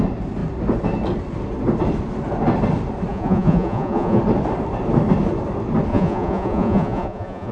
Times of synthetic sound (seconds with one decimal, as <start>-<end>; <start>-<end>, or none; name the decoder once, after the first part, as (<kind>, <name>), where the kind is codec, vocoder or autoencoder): 3.1-4.2 (vocoder, Vocos); 5.9-7.5